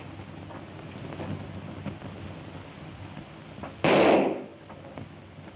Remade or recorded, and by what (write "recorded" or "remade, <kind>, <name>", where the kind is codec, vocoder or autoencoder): recorded